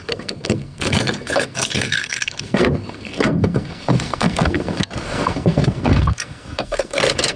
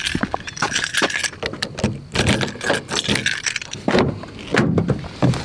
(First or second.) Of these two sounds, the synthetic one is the first